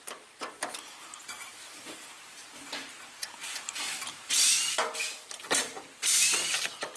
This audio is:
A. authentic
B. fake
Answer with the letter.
B